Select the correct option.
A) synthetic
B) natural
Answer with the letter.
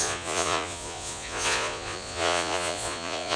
A